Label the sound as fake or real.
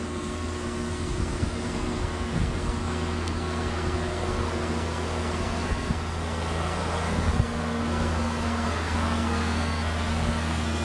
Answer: fake